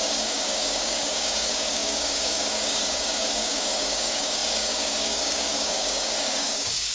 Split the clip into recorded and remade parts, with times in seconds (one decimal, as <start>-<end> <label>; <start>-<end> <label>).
0.0-6.9 remade